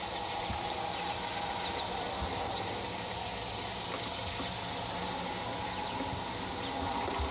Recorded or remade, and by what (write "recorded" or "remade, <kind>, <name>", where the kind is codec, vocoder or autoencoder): recorded